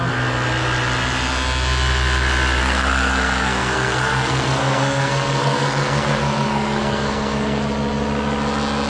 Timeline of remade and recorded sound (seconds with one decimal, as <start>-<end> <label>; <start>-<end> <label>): 0.0-2.6 recorded; 2.6-7.6 remade; 7.6-8.9 recorded